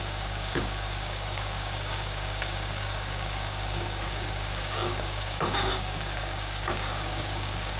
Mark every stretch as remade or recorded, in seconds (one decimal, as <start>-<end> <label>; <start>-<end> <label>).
0.0-7.8 remade